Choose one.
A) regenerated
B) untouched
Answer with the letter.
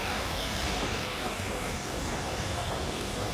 A